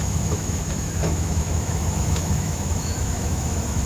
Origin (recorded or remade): remade